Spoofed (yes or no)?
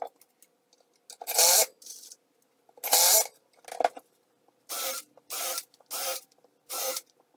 no